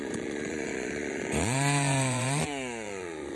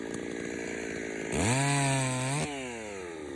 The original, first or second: second